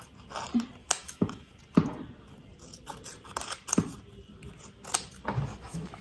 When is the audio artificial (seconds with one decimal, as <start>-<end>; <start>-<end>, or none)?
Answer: 0.8-1.6; 5.5-6.0